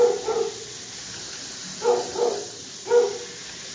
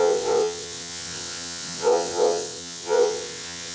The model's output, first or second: second